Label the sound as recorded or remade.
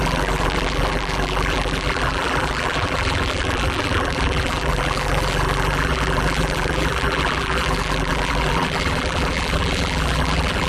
remade